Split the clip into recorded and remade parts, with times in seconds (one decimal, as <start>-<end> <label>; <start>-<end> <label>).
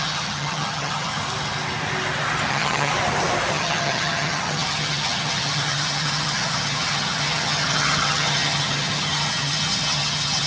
0.0-1.1 remade; 1.1-2.5 recorded; 2.5-2.9 remade; 2.9-3.5 recorded; 3.5-10.5 remade